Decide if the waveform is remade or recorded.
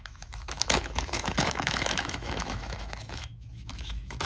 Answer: remade